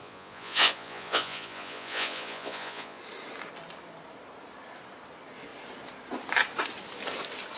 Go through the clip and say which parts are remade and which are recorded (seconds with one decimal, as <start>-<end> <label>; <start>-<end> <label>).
0.0-3.0 remade; 3.0-7.6 recorded

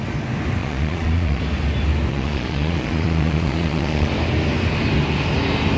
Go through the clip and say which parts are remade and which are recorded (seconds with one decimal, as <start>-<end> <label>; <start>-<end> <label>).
0.0-0.6 recorded; 0.6-1.4 remade; 1.4-2.1 recorded; 2.1-4.1 remade; 4.1-5.8 recorded

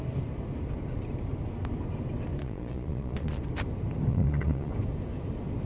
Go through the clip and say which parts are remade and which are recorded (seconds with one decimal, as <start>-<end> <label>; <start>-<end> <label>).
0.0-2.4 recorded; 2.4-3.4 remade; 3.4-4.1 recorded; 4.1-4.7 remade; 4.7-5.7 recorded

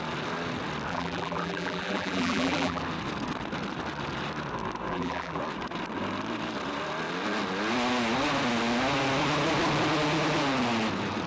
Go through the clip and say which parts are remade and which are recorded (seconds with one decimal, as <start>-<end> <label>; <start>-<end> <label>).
0.0-0.9 recorded; 0.9-2.8 remade; 2.8-4.9 recorded; 4.9-5.4 remade; 5.4-11.3 recorded

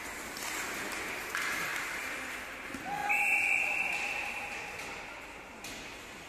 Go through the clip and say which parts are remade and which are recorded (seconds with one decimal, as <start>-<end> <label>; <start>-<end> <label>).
0.0-1.7 recorded; 1.7-2.6 remade; 2.6-6.3 recorded

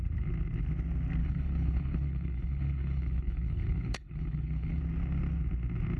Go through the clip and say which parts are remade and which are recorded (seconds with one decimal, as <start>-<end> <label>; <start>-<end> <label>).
0.0-1.2 recorded; 1.2-4.8 remade; 4.8-6.0 recorded

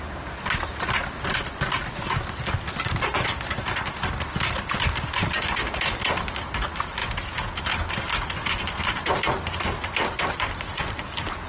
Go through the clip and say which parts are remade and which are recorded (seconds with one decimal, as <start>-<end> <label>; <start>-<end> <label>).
0.0-7.0 recorded; 7.0-7.6 remade; 7.6-11.5 recorded